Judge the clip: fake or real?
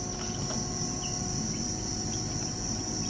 real